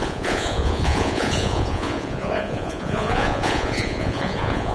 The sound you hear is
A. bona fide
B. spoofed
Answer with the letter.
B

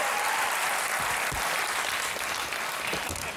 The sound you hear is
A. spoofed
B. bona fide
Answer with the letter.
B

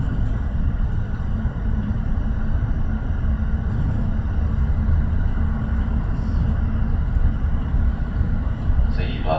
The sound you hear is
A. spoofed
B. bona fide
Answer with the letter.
B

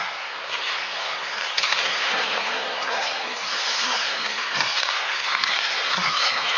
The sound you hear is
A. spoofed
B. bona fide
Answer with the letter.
A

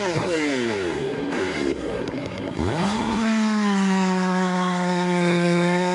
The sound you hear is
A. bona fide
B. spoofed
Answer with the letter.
B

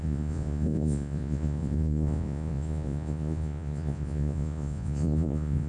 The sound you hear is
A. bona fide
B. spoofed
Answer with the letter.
B